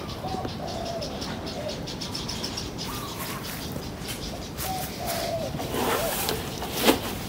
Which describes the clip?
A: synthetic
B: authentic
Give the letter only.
A